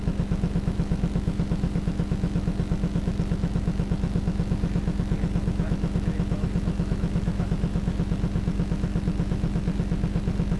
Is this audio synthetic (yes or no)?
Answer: yes